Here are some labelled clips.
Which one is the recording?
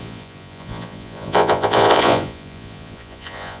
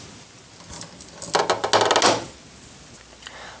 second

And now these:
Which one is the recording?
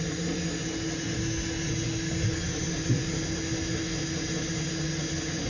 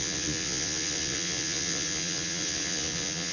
first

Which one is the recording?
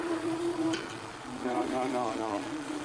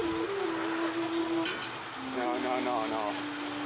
second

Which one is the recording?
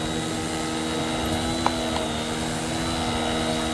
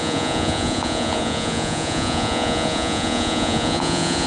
first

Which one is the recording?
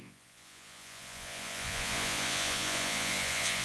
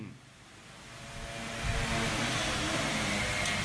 second